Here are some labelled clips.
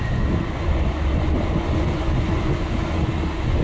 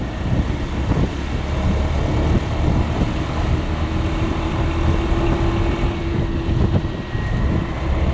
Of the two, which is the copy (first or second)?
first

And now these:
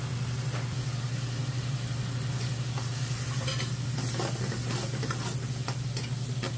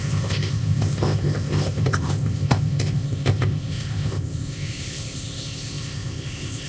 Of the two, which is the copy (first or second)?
second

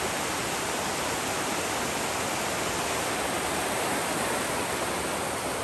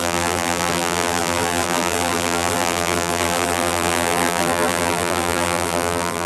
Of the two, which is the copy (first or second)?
second